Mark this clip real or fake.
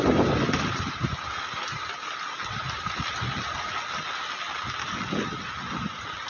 real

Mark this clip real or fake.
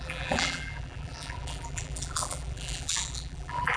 fake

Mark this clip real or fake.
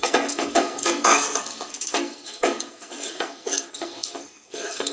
fake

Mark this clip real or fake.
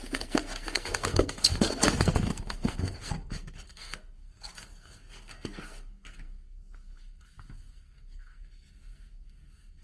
fake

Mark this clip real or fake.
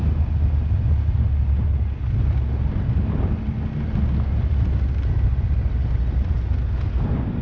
real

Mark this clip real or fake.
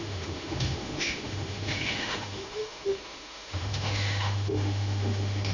fake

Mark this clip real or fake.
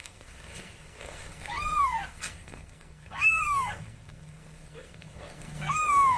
fake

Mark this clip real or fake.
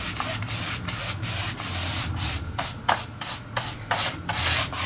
real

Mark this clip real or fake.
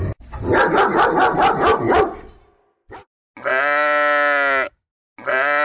real